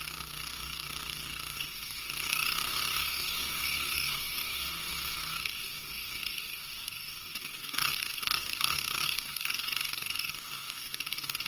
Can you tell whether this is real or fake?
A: fake